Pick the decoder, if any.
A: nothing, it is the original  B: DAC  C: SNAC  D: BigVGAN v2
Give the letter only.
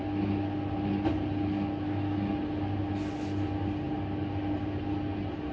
A